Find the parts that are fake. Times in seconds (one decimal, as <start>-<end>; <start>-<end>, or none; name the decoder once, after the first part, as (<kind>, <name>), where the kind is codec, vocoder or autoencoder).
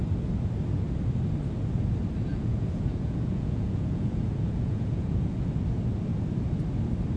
2.3-5.5 (vocoder, Vocos)